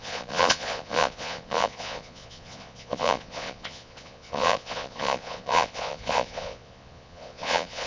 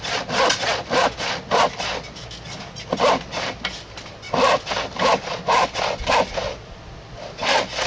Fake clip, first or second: first